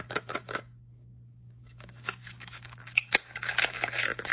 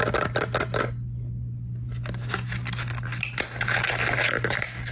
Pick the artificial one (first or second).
first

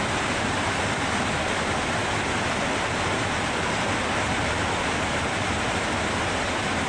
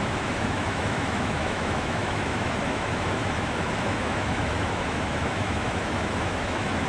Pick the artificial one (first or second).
second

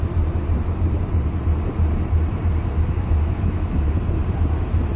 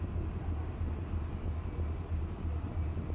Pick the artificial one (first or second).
first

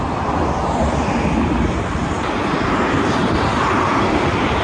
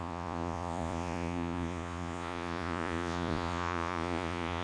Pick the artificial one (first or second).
second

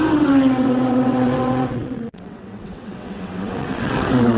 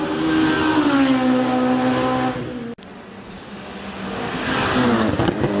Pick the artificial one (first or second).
first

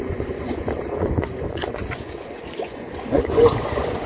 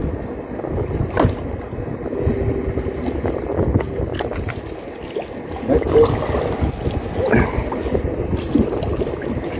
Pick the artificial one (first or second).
first